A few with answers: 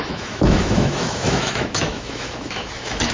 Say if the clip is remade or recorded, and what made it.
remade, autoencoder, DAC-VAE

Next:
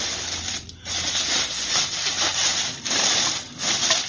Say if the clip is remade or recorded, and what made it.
recorded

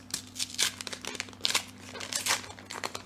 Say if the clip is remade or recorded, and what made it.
recorded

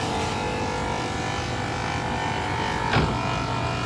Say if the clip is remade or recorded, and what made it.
recorded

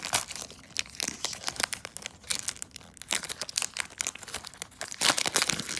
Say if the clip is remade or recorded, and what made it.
recorded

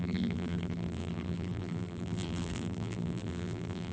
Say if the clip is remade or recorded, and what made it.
remade, vocoder, BigVGAN v2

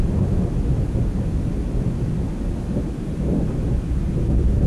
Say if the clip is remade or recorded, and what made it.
recorded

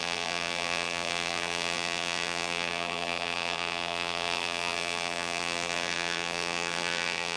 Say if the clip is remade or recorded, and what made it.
remade, vocoder, BigVGAN v2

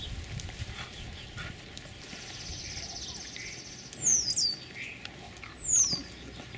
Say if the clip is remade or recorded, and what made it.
recorded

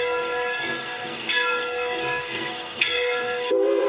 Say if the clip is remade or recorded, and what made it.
remade, codec, SNAC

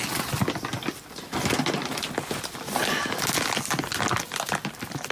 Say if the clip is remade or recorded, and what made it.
recorded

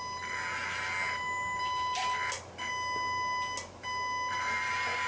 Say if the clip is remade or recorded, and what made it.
recorded